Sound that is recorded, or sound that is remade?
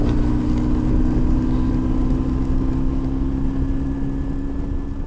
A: recorded